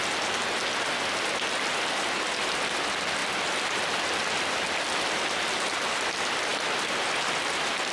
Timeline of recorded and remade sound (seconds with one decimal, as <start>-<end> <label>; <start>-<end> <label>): 0.0-3.2 recorded; 3.2-5.3 remade; 5.3-6.5 recorded; 6.5-7.0 remade; 7.0-7.9 recorded